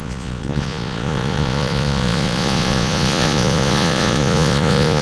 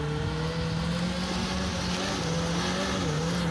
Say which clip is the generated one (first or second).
first